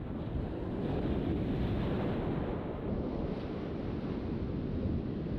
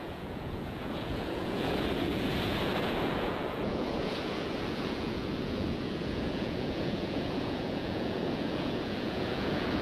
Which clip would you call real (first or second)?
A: first